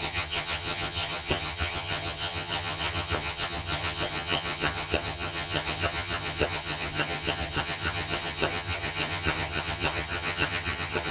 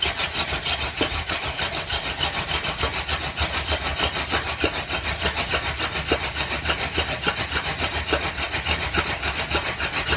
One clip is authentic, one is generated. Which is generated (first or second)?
first